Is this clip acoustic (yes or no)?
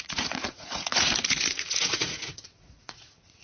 no